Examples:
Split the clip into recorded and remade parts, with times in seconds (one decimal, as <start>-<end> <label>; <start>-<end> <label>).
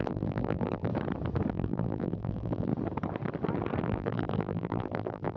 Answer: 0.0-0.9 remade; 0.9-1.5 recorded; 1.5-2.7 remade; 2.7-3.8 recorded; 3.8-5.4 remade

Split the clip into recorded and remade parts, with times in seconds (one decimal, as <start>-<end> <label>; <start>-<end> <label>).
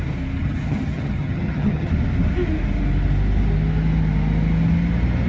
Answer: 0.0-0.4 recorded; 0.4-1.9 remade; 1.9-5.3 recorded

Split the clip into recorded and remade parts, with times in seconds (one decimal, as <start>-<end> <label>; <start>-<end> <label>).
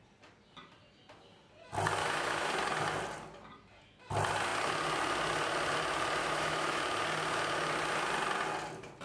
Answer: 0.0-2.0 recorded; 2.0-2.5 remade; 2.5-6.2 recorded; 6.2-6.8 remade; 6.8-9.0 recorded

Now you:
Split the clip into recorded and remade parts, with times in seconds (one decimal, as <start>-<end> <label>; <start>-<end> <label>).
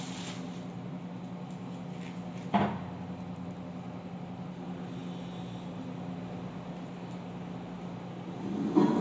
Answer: 0.0-9.0 recorded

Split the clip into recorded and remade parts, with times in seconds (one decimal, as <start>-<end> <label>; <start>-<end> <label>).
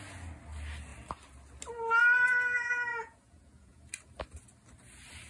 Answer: 0.0-2.9 recorded; 2.9-3.8 remade; 3.8-5.3 recorded